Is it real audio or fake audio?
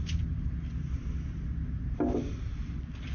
real